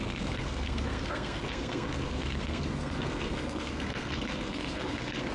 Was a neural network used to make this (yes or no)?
yes